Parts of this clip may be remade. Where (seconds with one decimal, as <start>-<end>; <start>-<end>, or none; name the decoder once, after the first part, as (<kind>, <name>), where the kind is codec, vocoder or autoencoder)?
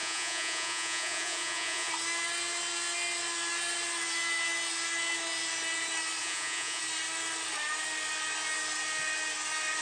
0.0-1.9 (vocoder, Vocos); 6.2-6.8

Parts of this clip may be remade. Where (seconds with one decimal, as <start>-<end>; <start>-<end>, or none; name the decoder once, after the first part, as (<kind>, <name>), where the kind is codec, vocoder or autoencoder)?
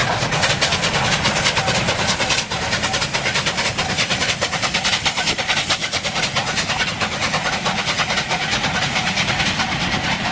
0.0-0.5 (vocoder, Vocos); 5.8-9.4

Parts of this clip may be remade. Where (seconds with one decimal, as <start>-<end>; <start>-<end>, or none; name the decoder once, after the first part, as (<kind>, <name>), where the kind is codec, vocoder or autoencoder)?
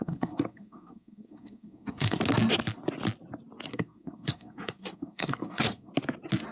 0.0-2.2 (codec, SNAC); 3.7-5.9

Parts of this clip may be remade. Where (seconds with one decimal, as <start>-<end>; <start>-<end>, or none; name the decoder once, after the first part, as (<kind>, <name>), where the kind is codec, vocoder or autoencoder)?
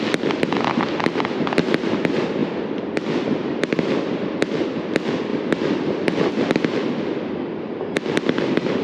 2.4-4.1 (vocoder, BigVGAN v2)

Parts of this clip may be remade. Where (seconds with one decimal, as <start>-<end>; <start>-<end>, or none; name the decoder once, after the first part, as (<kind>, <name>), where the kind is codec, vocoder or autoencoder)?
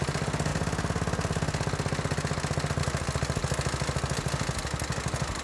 none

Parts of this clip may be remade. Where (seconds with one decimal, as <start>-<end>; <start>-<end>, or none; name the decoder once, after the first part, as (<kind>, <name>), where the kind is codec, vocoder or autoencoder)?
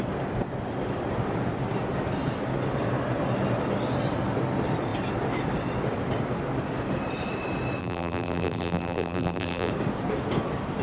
7.8-9.7 (vocoder, BigVGAN v2)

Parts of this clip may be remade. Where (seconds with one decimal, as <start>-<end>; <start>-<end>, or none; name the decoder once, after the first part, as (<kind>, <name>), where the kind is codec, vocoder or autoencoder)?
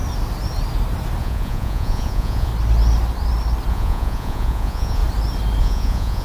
1.2-2.5 (vocoder, Vocos); 3.7-5.0; 5.6-6.2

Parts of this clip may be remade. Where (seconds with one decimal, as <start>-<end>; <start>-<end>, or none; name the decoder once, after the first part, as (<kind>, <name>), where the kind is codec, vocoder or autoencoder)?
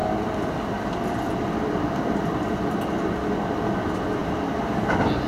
0.0-3.2 (vocoder, BigVGAN v2)